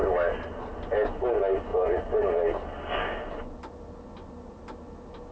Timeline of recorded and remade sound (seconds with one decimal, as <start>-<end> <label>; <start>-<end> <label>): 0.0-5.3 recorded